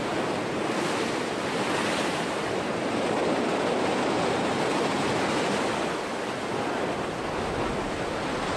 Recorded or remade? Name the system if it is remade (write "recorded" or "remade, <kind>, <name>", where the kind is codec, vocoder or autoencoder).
recorded